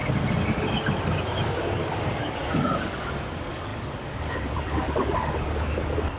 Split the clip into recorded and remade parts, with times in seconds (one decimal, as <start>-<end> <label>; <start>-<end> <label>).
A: 0.0-1.6 recorded; 1.6-6.2 remade